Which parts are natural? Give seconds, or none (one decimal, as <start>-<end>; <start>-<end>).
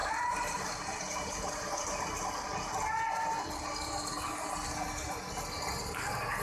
2.1-6.4